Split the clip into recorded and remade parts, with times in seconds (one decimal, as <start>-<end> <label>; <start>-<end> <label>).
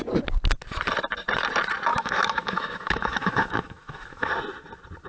0.0-1.9 recorded; 1.9-4.3 remade; 4.3-5.1 recorded